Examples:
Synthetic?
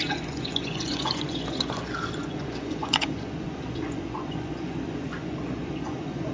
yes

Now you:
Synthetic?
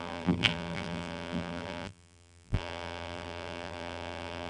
yes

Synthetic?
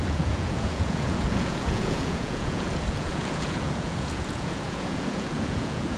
yes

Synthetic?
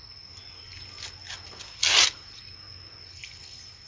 no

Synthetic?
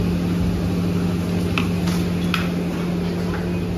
no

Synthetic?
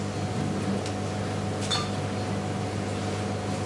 no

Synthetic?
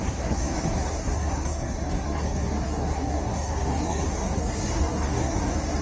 yes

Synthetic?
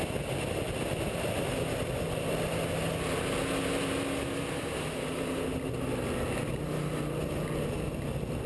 no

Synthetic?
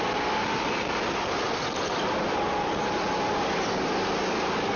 no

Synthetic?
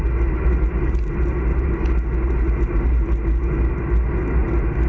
no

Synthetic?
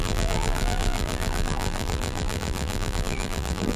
yes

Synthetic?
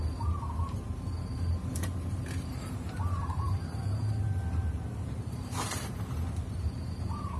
yes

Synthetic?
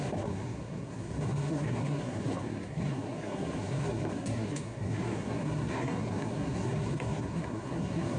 yes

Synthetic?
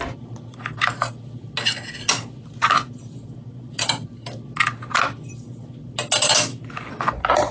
no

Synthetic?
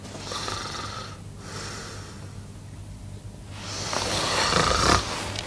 no